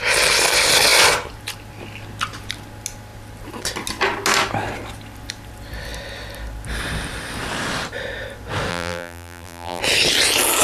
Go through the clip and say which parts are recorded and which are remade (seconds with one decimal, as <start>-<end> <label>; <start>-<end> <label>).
0.0-8.7 recorded; 8.7-9.8 remade; 9.8-10.6 recorded